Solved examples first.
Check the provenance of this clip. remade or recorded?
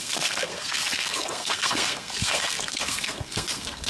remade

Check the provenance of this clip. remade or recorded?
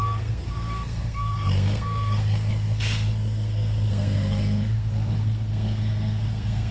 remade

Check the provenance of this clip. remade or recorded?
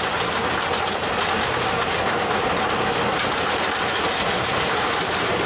recorded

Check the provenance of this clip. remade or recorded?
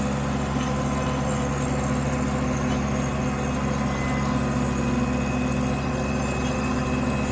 recorded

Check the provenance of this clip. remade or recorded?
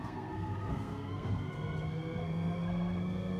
remade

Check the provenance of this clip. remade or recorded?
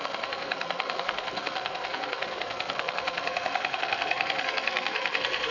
remade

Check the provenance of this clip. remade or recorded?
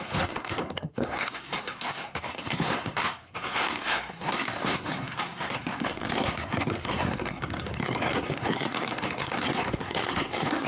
remade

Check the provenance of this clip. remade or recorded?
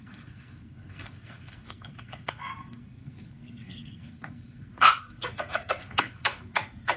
remade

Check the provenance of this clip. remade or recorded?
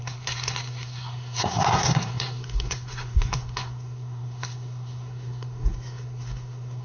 remade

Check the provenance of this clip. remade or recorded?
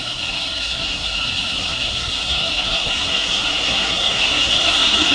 remade